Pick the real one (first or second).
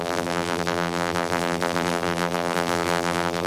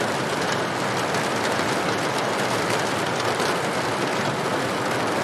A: second